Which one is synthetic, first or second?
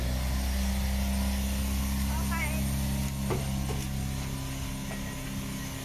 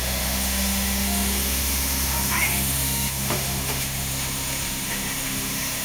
second